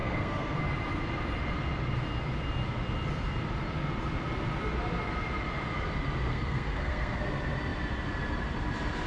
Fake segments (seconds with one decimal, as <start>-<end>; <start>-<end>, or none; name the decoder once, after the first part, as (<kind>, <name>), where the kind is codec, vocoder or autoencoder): 0.0-0.6 (codec, SNAC); 6.3-7.2

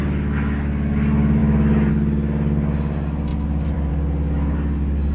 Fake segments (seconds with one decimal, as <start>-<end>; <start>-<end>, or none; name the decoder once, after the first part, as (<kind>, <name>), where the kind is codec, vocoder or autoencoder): 3.3-3.9 (vocoder, BigVGAN v2)

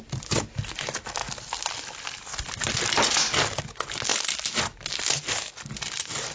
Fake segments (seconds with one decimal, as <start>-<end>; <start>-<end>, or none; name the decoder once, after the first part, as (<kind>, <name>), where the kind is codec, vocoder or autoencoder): 1.2-3.6 (vocoder, BigVGAN v2)

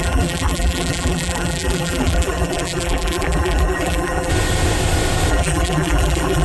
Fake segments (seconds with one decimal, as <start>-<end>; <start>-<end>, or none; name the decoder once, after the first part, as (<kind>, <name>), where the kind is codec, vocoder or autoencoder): 0.0-4.3 (vocoder, BigVGAN v2); 5.3-6.4

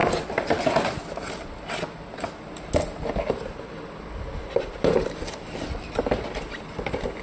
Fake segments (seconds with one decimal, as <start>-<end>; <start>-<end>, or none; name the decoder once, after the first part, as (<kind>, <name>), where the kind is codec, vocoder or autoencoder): none